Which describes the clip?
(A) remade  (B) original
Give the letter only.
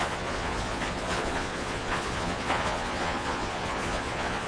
A